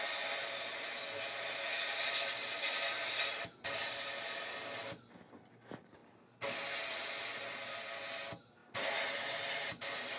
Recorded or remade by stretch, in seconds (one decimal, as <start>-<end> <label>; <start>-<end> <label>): 0.0-10.2 recorded

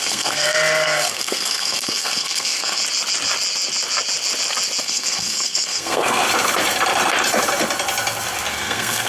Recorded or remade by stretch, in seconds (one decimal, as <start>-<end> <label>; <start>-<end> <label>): 0.0-2.8 remade; 2.8-4.8 recorded; 4.8-6.2 remade; 6.2-8.5 recorded; 8.5-9.1 remade

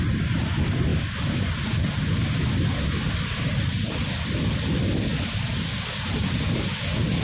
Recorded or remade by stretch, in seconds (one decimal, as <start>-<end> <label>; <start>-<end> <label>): 0.0-5.1 recorded; 5.1-5.7 remade; 5.7-7.2 recorded

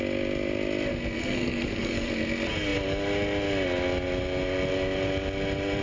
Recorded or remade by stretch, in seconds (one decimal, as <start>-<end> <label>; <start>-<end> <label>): 0.0-1.2 recorded; 1.2-2.1 remade; 2.1-5.8 recorded

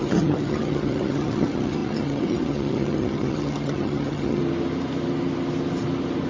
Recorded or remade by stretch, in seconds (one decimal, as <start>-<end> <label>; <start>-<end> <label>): 0.0-4.4 remade; 4.4-6.3 recorded

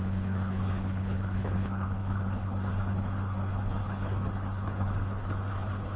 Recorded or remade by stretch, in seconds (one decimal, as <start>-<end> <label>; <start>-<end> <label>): 0.0-6.0 remade